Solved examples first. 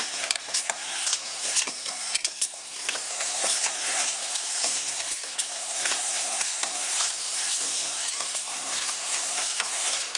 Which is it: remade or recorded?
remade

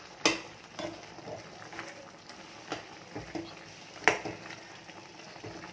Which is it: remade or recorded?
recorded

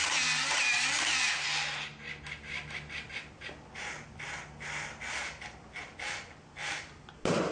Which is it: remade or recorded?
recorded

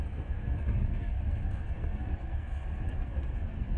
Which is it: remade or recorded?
remade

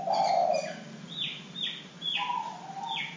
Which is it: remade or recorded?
recorded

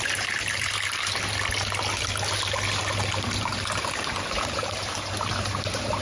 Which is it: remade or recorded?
recorded